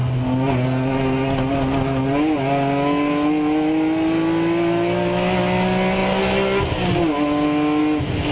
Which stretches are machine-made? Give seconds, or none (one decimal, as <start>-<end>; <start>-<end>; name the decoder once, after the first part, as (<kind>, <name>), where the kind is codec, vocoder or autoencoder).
none